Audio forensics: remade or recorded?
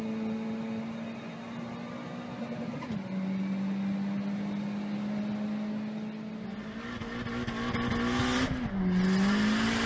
recorded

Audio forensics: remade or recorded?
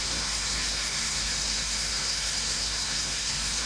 remade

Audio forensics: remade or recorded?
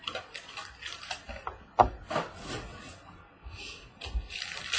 recorded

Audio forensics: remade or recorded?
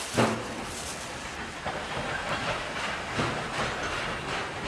recorded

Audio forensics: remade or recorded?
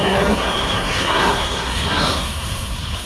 remade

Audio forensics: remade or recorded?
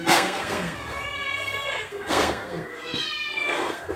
remade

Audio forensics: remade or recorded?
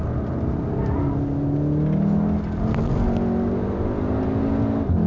recorded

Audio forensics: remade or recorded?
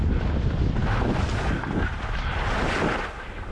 recorded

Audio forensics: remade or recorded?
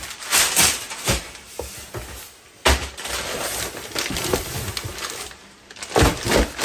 recorded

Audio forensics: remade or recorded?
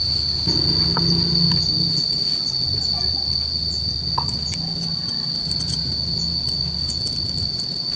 recorded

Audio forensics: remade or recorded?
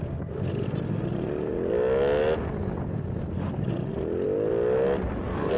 recorded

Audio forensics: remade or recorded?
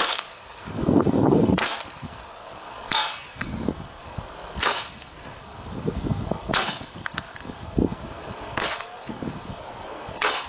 remade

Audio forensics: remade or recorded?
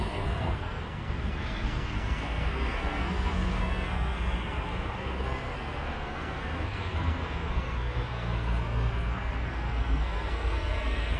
remade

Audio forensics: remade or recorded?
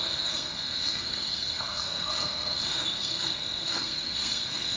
remade